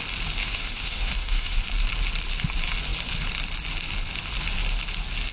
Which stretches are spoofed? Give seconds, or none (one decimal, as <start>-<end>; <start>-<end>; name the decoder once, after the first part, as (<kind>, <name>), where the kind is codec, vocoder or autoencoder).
0.4-1.7 (autoencoder, DAC-VAE)